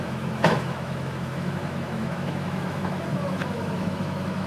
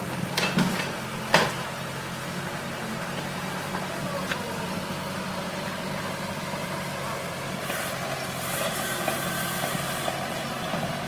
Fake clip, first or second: first